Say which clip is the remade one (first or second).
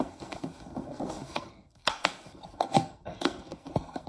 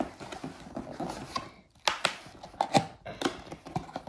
first